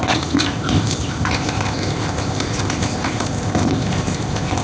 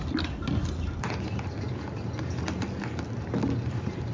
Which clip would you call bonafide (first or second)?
second